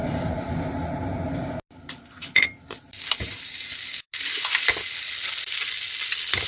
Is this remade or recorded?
recorded